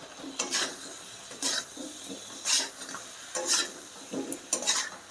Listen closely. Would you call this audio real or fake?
real